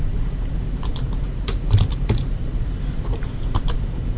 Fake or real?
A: fake